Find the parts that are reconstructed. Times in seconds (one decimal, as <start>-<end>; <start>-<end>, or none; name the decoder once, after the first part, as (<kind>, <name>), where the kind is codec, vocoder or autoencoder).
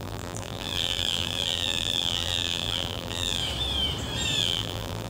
0.0-3.4 (vocoder, BigVGAN v2); 4.4-5.1